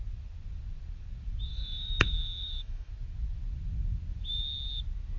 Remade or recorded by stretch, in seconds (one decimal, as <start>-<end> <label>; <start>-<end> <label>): 0.0-1.5 recorded; 1.5-2.9 remade; 2.9-5.2 recorded